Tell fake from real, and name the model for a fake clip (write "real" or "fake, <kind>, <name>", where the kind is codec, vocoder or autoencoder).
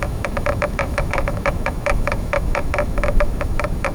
fake, autoencoder, DAC-VAE